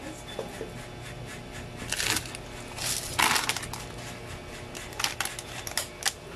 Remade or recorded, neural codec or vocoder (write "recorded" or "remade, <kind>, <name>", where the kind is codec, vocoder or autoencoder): recorded